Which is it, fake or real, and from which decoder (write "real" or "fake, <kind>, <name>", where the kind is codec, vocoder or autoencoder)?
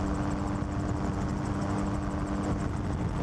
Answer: real